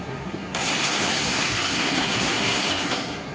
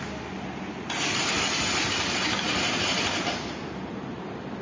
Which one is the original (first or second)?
second